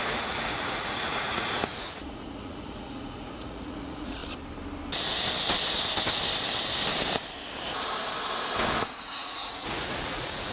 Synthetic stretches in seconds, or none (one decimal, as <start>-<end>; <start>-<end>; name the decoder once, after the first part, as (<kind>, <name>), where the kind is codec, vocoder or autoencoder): 0.0-4.2 (vocoder, Vocos); 9.0-10.5